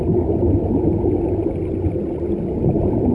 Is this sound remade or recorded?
recorded